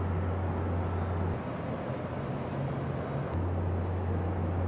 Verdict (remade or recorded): recorded